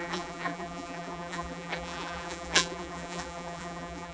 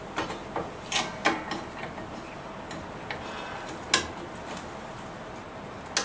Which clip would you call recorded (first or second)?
second